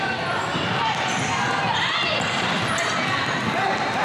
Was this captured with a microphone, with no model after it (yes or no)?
yes